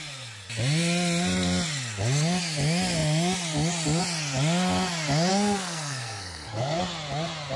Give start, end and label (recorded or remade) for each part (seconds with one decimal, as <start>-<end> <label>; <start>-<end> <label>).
0.0-5.3 recorded; 5.3-6.8 remade; 6.8-7.6 recorded